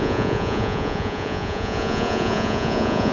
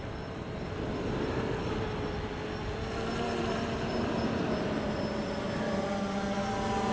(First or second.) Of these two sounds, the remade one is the first